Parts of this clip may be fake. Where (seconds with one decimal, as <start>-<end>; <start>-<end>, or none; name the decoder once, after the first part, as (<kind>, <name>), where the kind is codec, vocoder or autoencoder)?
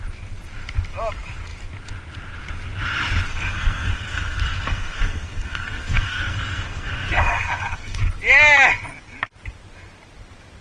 3.3-8.0 (codec, SNAC)